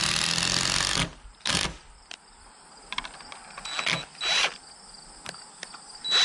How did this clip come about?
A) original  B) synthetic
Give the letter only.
A